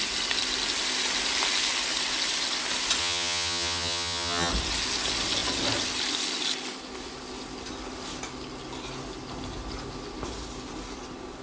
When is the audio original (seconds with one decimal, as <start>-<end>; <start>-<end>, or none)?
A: 0.0-3.0; 4.5-11.4